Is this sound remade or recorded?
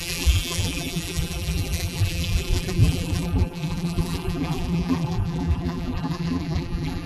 remade